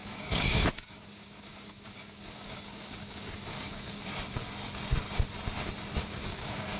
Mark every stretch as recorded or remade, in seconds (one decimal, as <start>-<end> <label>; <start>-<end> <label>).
0.0-4.1 remade; 4.1-6.2 recorded; 6.2-6.8 remade